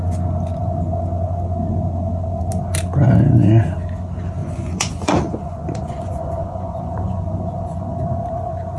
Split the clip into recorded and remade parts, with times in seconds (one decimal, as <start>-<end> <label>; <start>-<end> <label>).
0.0-4.4 recorded; 4.4-8.2 remade; 8.2-8.8 recorded

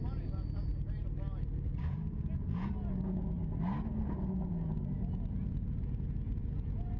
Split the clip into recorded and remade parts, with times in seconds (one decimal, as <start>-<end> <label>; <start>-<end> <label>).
0.0-0.7 remade; 0.7-1.8 recorded; 1.8-3.4 remade; 3.4-4.0 recorded; 4.0-7.0 remade

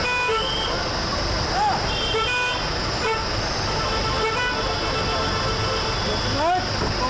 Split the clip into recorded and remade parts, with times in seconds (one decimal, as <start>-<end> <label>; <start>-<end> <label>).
0.0-7.1 recorded

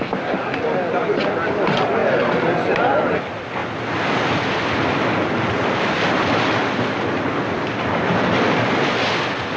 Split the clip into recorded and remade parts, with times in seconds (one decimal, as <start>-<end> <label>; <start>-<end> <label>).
0.0-9.6 recorded

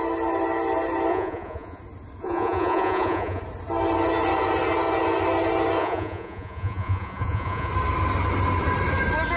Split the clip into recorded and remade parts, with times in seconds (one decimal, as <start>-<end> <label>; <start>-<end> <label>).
0.0-1.1 recorded; 1.1-1.8 remade; 1.8-2.2 recorded; 2.2-3.4 remade; 3.4-5.8 recorded; 5.8-7.7 remade; 7.7-9.4 recorded

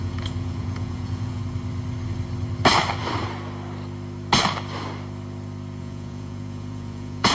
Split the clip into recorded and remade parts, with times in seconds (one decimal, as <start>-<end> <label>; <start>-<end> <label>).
0.0-1.4 remade; 1.4-5.8 recorded; 5.8-7.3 remade

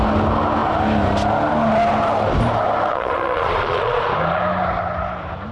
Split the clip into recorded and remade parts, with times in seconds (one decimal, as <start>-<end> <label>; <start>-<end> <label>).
0.0-2.9 recorded; 2.9-4.0 remade; 4.0-5.5 recorded

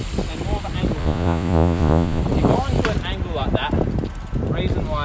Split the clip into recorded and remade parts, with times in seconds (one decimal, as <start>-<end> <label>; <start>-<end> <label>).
0.0-1.0 recorded; 1.0-2.2 remade; 2.2-5.0 recorded